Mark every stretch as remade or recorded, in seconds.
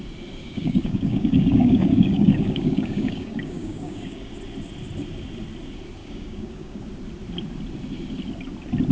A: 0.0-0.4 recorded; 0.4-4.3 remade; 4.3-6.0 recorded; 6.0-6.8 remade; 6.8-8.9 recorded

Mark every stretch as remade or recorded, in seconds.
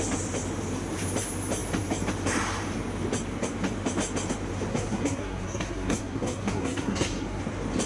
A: 0.0-4.7 recorded; 4.7-7.4 remade; 7.4-7.9 recorded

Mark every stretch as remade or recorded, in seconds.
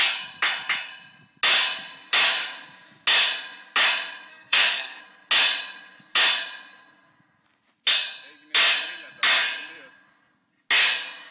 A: 0.0-4.3 recorded; 4.3-5.0 remade; 5.0-11.3 recorded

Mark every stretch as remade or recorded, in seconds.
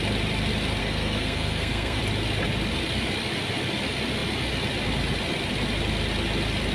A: 0.0-0.8 recorded; 0.8-2.0 remade; 2.0-6.7 recorded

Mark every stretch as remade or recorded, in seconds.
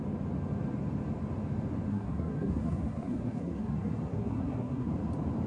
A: 0.0-1.9 recorded; 1.9-4.9 remade; 4.9-5.5 recorded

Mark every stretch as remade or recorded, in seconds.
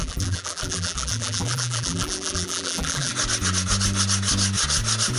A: 0.0-3.1 remade; 3.1-5.2 recorded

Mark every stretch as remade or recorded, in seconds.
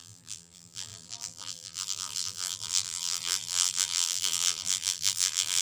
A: 0.0-5.6 remade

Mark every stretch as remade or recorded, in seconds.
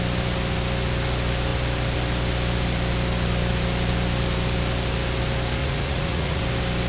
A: 0.0-5.6 recorded; 5.6-6.4 remade; 6.4-6.9 recorded